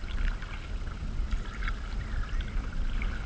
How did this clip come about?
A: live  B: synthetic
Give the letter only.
A